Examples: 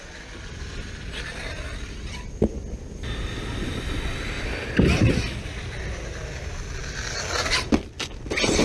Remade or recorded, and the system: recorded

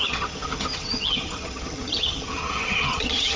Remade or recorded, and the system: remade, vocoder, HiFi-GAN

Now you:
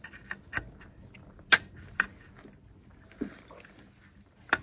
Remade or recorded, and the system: recorded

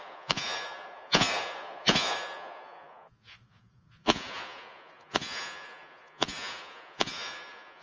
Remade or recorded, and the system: remade, vocoder, Vocos